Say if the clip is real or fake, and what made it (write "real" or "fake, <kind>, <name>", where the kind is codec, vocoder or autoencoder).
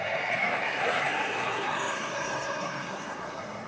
fake, codec, SNAC